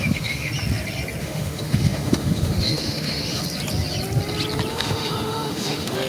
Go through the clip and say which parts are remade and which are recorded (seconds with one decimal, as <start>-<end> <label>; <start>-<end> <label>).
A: 0.0-0.5 remade; 0.5-1.2 recorded; 1.2-3.4 remade; 3.4-4.7 recorded; 4.7-6.1 remade